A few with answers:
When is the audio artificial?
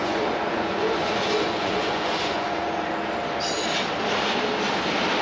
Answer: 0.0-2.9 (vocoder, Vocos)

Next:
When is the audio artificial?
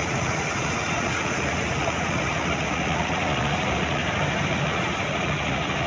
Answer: 0.0-4.0 (vocoder, Vocos); 4.5-5.9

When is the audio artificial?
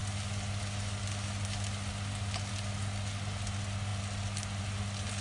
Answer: none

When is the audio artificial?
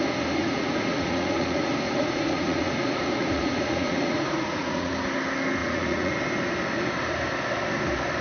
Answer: 0.4-4.9 (vocoder, Vocos); 5.6-6.1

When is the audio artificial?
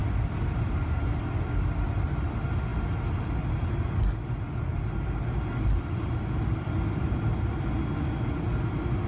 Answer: none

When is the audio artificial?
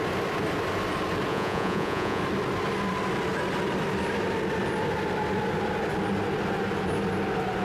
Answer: 1.3-2.2 (vocoder, Vocos)